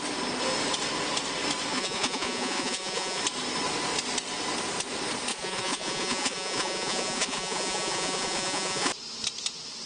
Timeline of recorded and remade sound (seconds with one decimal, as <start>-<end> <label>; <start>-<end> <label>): 0.0-1.7 recorded; 1.7-3.2 remade; 3.2-5.3 recorded; 5.3-8.9 remade; 8.9-9.9 recorded